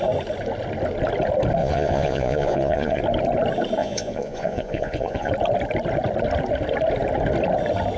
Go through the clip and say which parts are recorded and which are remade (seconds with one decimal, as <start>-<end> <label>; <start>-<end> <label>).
0.0-1.6 recorded; 1.6-3.0 remade; 3.0-3.8 recorded; 3.8-5.3 remade; 5.3-8.0 recorded